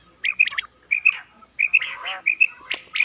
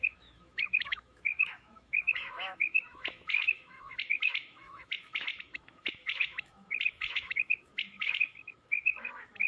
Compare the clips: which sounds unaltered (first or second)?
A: first